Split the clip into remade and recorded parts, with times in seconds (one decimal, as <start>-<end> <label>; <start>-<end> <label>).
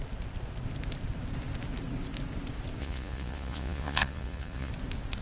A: 0.0-2.8 recorded; 2.8-4.7 remade; 4.7-5.2 recorded